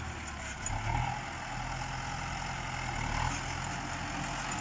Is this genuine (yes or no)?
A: yes